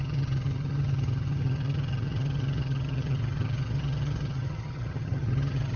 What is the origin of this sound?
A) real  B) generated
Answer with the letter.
B